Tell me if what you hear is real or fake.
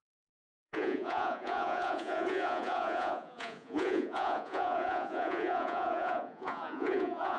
fake